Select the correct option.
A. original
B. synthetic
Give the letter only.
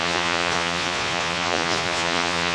B